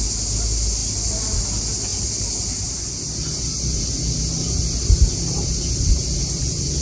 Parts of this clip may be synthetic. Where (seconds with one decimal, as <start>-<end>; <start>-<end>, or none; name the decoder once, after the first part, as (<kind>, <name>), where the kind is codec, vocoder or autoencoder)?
none